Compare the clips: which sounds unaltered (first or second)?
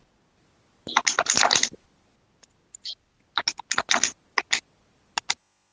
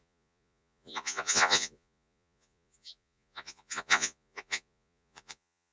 first